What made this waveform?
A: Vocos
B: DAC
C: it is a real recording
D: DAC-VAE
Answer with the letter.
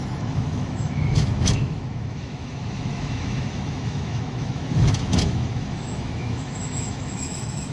D